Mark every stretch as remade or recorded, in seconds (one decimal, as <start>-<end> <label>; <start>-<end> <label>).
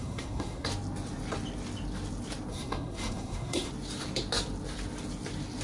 0.0-0.7 remade; 0.7-2.5 recorded; 2.5-3.7 remade; 3.7-5.6 recorded